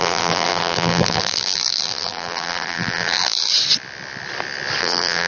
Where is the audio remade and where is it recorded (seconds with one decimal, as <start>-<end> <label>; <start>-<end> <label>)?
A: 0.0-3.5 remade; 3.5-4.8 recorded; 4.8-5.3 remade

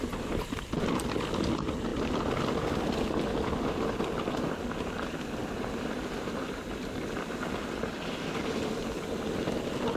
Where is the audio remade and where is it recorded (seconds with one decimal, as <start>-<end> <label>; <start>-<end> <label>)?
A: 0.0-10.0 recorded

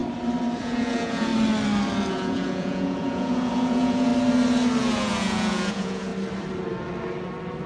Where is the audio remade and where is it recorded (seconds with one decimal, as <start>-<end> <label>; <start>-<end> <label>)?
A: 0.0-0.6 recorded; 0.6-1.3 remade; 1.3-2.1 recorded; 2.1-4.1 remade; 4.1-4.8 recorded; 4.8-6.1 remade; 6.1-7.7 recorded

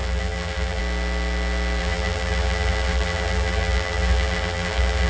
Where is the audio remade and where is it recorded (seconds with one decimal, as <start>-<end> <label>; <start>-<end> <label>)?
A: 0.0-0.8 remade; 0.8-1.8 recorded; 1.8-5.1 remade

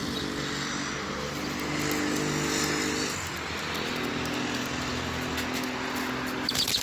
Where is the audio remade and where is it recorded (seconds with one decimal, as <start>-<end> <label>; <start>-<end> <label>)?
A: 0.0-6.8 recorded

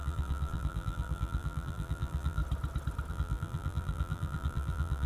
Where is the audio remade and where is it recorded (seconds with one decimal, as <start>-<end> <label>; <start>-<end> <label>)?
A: 0.0-2.4 remade; 2.4-3.1 recorded; 3.1-5.1 remade